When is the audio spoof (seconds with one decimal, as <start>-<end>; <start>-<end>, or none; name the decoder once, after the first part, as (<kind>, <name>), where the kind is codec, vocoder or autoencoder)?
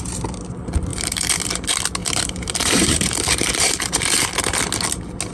0.9-1.4 (vocoder, BigVGAN v2); 2.0-4.2